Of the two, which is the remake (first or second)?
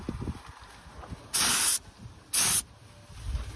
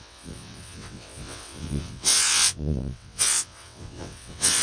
second